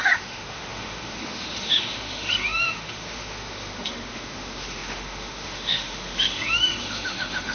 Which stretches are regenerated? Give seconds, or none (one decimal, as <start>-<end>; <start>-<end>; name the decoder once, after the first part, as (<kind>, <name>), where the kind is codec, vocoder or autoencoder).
0.0-7.5 (autoencoder, DAC-VAE)